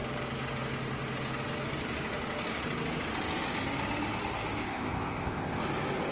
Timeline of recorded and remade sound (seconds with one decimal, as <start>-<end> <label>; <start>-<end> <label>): 0.0-4.6 recorded; 4.6-5.6 remade; 5.6-6.1 recorded